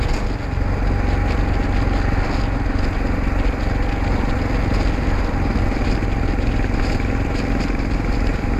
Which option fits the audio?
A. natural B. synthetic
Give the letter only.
A